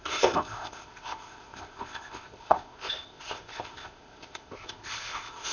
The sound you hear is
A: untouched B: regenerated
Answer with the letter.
B